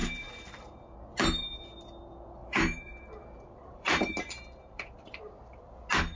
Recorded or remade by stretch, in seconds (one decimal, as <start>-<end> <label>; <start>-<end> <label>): 0.0-2.4 recorded; 2.4-5.6 remade; 5.6-6.2 recorded